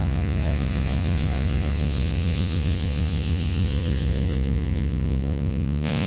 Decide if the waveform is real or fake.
fake